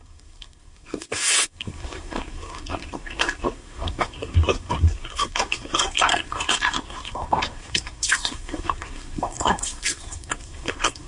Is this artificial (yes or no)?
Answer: yes